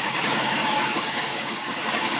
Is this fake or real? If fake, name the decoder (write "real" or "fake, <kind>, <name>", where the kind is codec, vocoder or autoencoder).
fake, codec, DAC